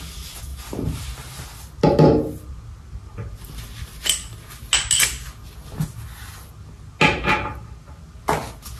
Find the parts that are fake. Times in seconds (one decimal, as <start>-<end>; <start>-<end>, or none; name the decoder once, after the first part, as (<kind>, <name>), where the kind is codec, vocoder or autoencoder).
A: 0.5-1.0 (vocoder, BigVGAN v2)